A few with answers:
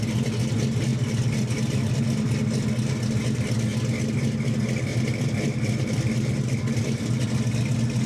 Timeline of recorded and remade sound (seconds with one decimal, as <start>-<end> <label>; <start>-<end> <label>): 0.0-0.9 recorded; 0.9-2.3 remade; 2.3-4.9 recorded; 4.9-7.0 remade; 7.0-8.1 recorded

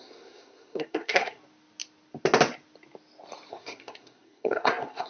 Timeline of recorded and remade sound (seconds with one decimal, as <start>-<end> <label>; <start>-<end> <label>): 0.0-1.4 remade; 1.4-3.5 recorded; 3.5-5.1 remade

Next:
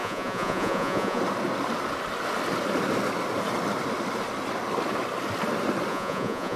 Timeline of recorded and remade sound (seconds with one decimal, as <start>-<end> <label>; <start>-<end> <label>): 0.0-1.2 remade; 1.2-5.9 recorded; 5.9-6.6 remade

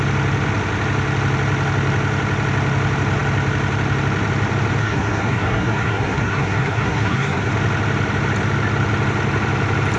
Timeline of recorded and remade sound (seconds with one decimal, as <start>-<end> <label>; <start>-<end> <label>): 0.0-4.8 recorded; 4.8-7.5 remade; 7.5-10.0 recorded

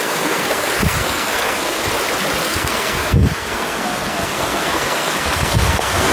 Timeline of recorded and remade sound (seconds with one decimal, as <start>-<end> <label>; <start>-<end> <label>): 0.0-1.9 remade; 1.9-2.4 recorded; 2.4-6.1 remade